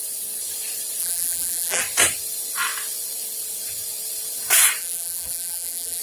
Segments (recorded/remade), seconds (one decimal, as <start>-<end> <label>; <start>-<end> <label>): 0.0-1.0 recorded; 1.0-1.8 remade; 1.8-4.8 recorded; 4.8-6.0 remade